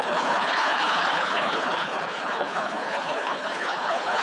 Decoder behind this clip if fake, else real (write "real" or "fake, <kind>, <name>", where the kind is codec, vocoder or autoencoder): fake, codec, HILCodec